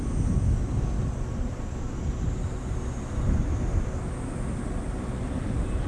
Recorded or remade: recorded